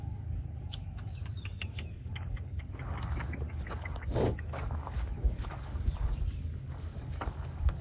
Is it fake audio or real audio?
fake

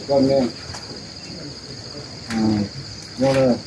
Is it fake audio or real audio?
real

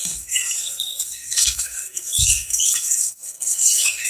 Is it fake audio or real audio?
fake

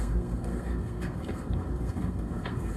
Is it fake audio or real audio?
fake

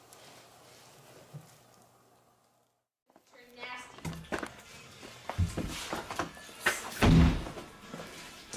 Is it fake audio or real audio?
real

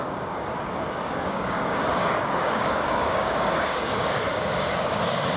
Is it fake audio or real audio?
fake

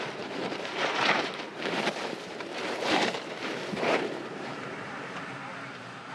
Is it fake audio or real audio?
fake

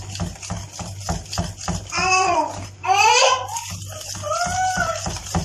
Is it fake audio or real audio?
real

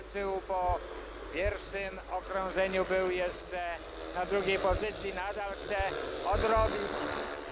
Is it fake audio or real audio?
real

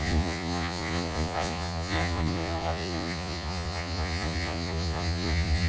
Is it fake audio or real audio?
fake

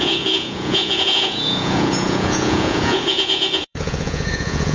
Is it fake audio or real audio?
fake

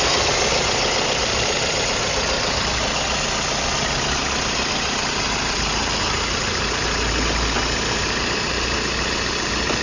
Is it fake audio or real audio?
real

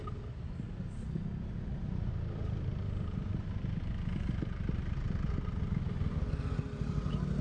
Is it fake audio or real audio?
real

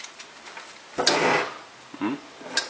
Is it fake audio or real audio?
real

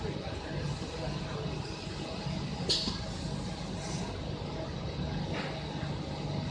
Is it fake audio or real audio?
real